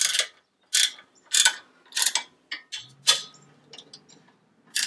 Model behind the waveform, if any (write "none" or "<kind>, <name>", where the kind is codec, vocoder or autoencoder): none